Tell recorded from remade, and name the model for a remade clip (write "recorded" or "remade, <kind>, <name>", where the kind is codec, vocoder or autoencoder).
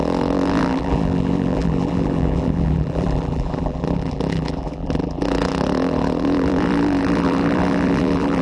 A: remade, vocoder, BigVGAN v2